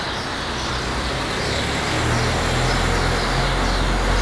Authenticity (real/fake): real